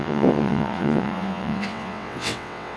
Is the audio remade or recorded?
remade